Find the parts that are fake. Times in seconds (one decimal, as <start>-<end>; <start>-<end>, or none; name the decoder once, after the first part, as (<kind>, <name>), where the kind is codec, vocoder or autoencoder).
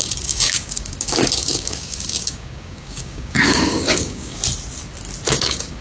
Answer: 0.0-4.4 (codec, DAC); 5.3-5.8